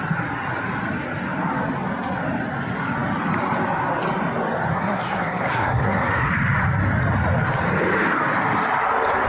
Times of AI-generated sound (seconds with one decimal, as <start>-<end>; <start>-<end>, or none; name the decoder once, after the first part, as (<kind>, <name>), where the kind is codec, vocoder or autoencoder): 4.7-6.3 (codec, SNAC)